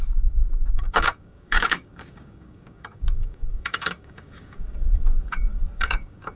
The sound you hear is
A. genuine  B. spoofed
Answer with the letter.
B